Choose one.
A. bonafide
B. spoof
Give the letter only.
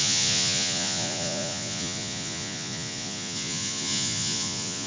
B